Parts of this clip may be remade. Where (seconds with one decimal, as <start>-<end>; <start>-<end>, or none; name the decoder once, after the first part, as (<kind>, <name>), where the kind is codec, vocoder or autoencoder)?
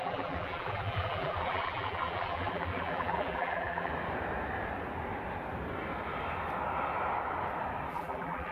0.0-3.9 (vocoder, BigVGAN v2); 7.9-8.5